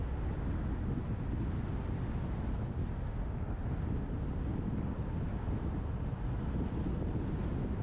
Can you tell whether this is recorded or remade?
recorded